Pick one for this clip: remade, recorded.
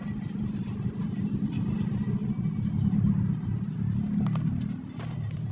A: recorded